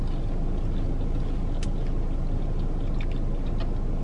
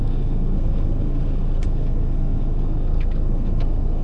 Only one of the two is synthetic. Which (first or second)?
second